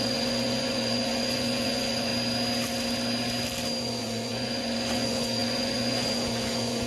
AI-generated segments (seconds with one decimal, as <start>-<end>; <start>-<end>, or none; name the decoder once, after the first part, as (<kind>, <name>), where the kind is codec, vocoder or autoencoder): 0.0-2.1 (vocoder, Vocos); 3.8-6.9